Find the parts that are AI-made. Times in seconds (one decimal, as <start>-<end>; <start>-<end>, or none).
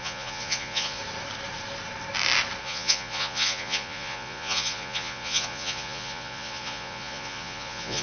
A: 0.0-1.0; 2.6-8.0